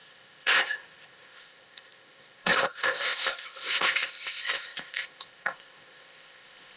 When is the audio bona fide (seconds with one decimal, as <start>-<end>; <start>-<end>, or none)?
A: none